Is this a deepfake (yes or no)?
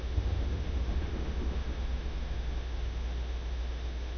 yes